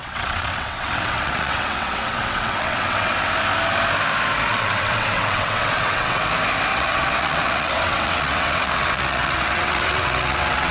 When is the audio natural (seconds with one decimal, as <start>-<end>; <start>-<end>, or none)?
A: 3.1-4.5; 6.2-6.7